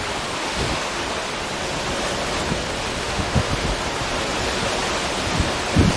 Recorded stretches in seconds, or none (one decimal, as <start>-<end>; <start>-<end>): 0.0-0.4; 1.0-3.0; 3.5-6.0